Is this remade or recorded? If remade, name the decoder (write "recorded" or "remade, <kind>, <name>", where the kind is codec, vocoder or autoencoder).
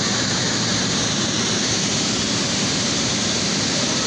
remade, vocoder, BigVGAN v2